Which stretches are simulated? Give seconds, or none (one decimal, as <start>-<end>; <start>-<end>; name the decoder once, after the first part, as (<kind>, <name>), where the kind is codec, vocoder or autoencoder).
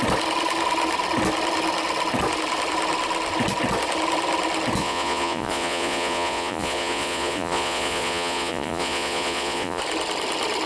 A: 4.8-9.8 (vocoder, Vocos)